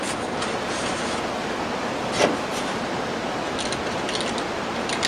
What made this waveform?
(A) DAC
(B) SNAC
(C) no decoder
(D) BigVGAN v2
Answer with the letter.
C